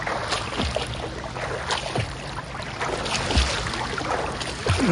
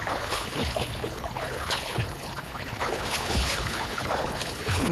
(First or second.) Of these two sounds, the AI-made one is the second